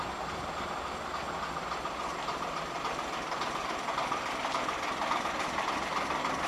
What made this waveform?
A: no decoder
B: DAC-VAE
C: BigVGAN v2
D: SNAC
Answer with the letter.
C